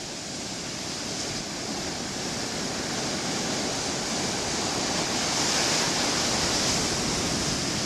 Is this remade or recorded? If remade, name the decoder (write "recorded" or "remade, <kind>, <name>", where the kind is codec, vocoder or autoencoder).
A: recorded